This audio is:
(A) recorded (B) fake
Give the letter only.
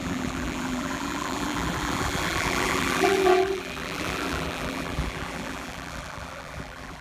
B